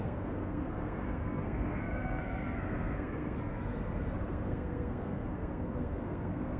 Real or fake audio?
fake